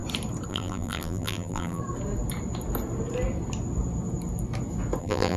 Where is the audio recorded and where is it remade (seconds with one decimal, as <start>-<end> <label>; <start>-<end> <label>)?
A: 0.0-0.5 recorded; 0.5-1.8 remade; 1.8-5.0 recorded; 5.0-5.4 remade